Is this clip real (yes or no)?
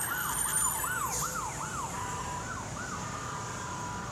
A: yes